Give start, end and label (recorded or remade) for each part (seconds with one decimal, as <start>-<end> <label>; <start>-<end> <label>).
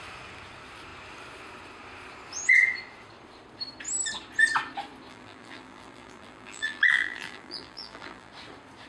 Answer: 0.0-5.1 recorded; 5.1-8.3 remade; 8.3-8.9 recorded